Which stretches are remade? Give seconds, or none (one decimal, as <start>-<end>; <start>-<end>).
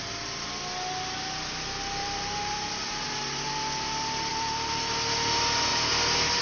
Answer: 2.0-2.9; 4.3-4.8